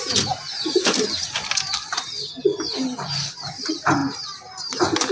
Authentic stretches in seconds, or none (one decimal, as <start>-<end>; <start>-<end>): 0.0-5.1